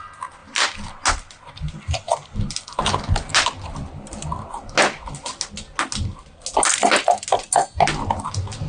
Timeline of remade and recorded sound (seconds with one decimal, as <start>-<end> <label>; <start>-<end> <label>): 0.0-8.7 recorded